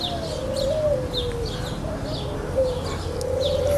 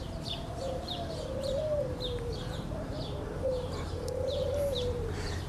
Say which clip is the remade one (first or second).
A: second